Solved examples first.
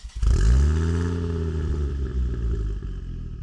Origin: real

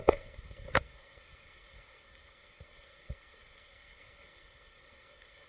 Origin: fake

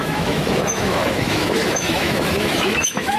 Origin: fake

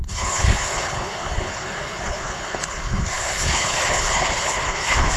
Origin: fake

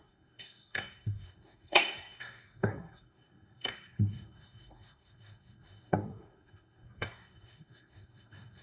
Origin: fake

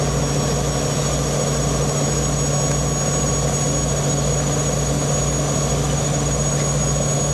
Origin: real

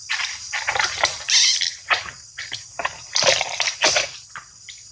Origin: fake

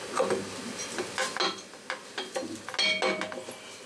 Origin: real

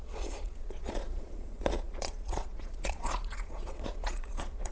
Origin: fake